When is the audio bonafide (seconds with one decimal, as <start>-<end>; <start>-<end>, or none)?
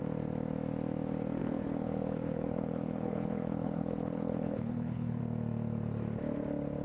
0.0-1.4; 5.2-6.8